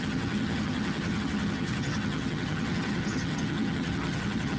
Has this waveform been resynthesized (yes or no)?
yes